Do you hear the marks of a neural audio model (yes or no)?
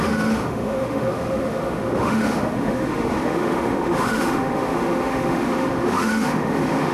yes